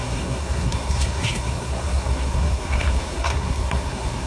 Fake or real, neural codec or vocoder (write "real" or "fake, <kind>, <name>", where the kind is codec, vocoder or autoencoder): fake, codec, SNAC